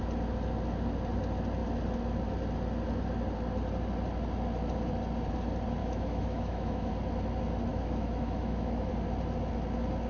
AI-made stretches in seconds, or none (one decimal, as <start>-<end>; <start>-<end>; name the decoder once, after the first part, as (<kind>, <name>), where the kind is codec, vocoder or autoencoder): 5.8-6.9 (autoencoder, DAC-VAE); 7.7-8.9

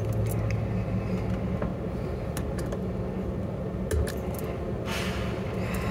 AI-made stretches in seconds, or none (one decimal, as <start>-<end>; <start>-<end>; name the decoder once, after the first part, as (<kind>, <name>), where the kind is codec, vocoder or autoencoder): none

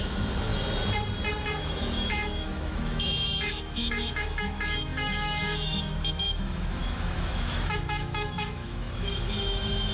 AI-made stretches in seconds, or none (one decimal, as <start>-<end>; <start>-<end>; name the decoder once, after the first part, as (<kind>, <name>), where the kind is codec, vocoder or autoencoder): 0.0-0.5 (autoencoder, DAC-VAE); 1.6-9.9

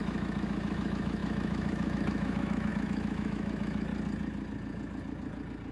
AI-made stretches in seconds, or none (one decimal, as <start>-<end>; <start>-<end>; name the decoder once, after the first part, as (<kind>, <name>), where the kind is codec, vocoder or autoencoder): 0.0-3.9 (autoencoder, DAC-VAE)

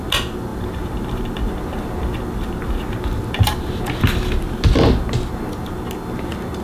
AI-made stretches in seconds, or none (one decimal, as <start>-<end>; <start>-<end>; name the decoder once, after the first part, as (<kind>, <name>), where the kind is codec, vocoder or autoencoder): none

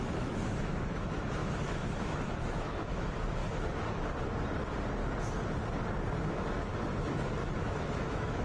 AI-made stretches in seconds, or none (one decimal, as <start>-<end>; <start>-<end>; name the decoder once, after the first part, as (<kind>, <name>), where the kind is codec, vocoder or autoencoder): 0.0-3.4 (autoencoder, DAC-VAE); 6.3-6.7; 7.6-8.4

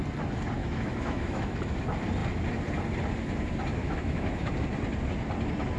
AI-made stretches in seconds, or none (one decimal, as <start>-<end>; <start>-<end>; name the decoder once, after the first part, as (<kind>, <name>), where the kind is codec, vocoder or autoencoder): 0.6-1.8 (autoencoder, DAC-VAE); 3.8-4.5